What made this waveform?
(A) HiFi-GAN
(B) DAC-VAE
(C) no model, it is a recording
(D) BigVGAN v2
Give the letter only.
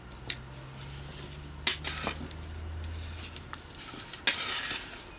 C